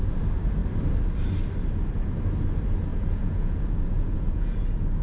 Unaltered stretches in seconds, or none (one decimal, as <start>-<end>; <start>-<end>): 0.0-2.9; 4.6-5.0